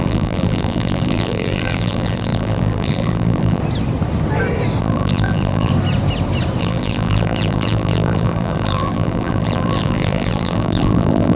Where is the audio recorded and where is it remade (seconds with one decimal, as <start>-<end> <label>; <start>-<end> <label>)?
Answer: 0.0-3.6 remade; 3.6-4.8 recorded; 4.8-5.7 remade; 5.7-6.6 recorded; 6.6-11.4 remade